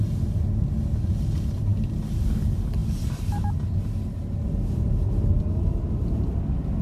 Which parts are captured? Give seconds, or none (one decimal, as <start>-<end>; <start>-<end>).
0.0-6.8